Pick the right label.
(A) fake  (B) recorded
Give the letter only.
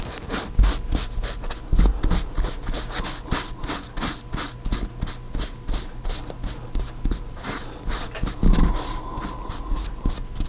B